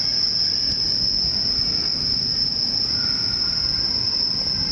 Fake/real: real